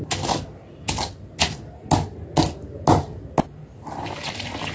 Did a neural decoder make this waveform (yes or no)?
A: no